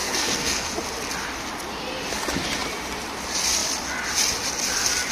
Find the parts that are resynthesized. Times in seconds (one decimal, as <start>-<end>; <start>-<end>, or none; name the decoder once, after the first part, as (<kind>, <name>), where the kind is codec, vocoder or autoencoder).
0.0-0.7 (codec, SNAC)